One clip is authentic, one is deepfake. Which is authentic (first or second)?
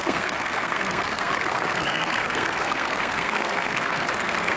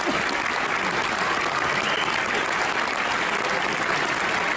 second